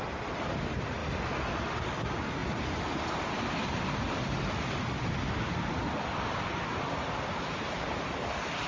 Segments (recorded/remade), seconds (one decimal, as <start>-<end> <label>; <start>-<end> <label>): 0.0-2.4 recorded; 2.4-3.1 remade; 3.1-3.6 recorded; 3.6-6.7 remade; 6.7-8.7 recorded